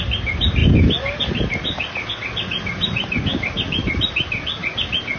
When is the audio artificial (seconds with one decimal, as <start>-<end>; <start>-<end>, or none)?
none